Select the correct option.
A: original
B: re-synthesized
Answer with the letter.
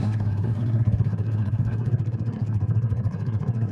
B